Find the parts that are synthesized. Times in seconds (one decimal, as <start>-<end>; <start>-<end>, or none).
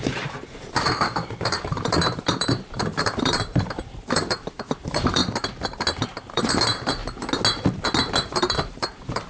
0.0-5.2; 6.2-7.0; 8.3-9.3